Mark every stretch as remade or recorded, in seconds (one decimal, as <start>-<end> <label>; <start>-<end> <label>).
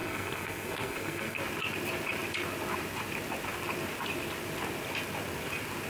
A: 0.0-1.4 remade; 1.4-5.9 recorded